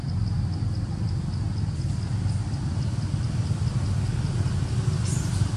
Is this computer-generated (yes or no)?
no